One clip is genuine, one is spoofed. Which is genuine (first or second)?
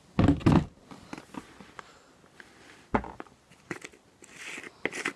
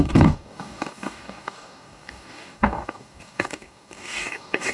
first